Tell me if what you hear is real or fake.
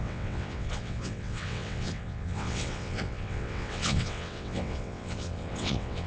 fake